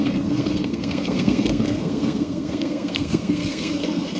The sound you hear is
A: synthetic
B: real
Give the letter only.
A